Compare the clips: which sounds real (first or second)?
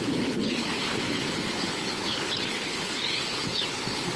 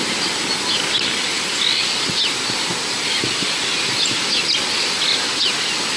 second